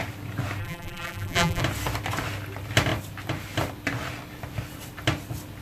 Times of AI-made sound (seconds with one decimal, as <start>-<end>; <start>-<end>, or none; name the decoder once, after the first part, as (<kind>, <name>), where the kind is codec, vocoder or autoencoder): 0.6-1.6 (vocoder, BigVGAN v2)